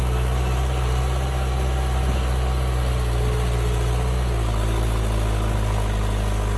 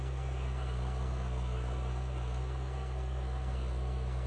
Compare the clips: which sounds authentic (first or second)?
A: first